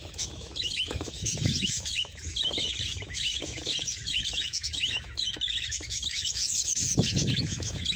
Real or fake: fake